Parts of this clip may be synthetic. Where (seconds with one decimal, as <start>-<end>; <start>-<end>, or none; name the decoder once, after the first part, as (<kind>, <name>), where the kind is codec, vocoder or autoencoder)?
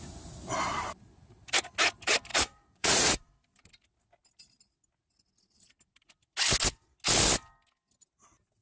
2.3-3.2 (vocoder, Vocos)